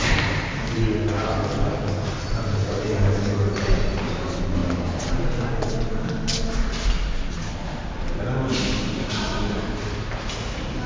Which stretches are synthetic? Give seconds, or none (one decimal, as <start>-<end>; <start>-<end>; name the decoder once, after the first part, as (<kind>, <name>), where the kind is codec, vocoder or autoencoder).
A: none